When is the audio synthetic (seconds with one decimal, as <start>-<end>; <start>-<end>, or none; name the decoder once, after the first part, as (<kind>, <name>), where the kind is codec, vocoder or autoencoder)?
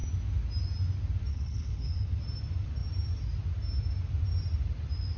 1.3-2.2 (codec, HILCodec)